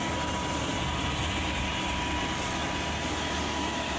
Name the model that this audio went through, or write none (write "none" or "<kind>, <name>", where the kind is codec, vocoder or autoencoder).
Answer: none